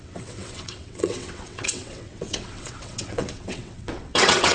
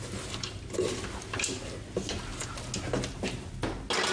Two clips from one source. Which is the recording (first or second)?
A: second